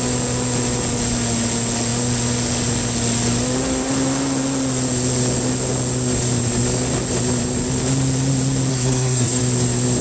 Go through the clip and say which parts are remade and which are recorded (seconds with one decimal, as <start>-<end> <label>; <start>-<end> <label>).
0.0-8.7 recorded; 8.7-9.4 remade; 9.4-10.0 recorded